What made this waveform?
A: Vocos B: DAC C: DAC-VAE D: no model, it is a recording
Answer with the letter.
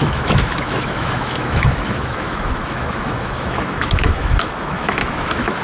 C